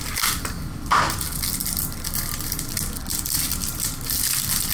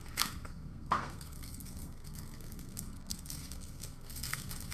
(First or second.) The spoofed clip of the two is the second